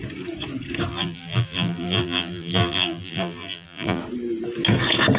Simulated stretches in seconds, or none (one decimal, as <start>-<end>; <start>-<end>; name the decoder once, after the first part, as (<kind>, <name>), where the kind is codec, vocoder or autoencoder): 0.9-4.0 (vocoder, BigVGAN v2)